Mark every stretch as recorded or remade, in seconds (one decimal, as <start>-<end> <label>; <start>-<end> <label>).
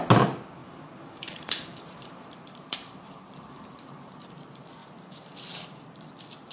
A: 0.0-0.6 recorded; 0.6-4.3 remade; 4.3-4.8 recorded; 4.8-6.1 remade; 6.1-6.5 recorded